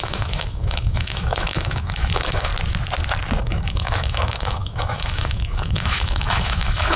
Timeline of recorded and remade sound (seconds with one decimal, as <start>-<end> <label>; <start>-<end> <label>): 0.0-2.5 remade; 2.5-3.4 recorded; 3.4-7.0 remade